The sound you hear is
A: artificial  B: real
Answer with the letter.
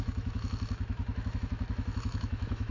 A